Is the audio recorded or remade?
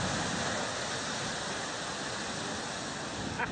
recorded